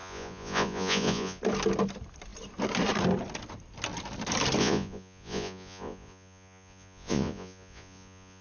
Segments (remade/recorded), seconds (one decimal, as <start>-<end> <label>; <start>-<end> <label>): 0.0-1.4 remade; 1.4-4.6 recorded; 4.6-8.4 remade